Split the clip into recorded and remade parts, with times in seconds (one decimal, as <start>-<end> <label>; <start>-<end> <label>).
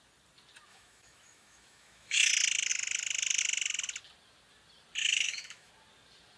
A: 0.0-0.7 recorded; 0.7-2.3 remade; 2.3-5.0 recorded; 5.0-5.7 remade; 5.7-6.4 recorded